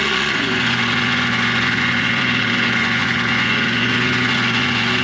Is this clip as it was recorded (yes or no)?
no